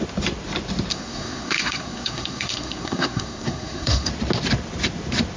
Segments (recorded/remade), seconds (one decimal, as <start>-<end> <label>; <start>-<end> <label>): 0.0-0.9 recorded; 0.9-4.1 remade; 4.1-5.4 recorded